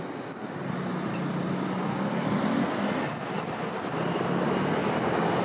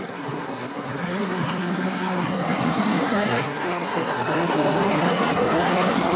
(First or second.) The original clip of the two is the first